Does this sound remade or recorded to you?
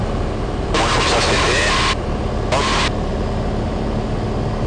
recorded